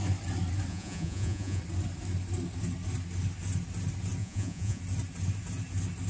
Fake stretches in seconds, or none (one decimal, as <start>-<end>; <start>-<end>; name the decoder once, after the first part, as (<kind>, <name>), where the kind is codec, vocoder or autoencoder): 0.7-1.6 (vocoder, Vocos); 4.2-4.8